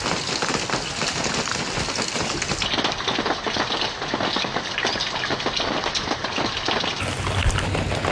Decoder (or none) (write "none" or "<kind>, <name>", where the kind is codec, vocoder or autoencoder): none